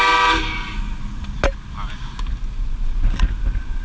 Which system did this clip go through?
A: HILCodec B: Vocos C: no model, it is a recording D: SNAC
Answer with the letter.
C